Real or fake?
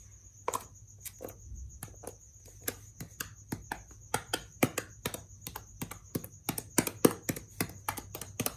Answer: real